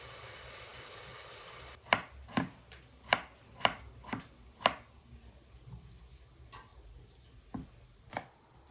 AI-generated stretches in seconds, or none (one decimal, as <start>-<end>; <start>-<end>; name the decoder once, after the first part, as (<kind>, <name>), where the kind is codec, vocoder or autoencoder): none